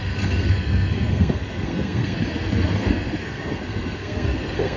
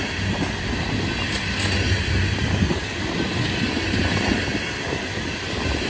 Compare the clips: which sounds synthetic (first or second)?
first